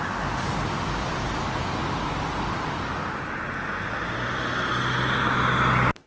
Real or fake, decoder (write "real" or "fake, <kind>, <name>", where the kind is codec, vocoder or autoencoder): real